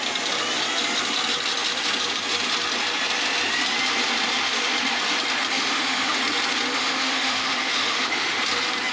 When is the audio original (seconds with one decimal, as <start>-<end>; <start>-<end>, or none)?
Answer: 0.0-5.5; 6.2-6.7; 8.4-8.9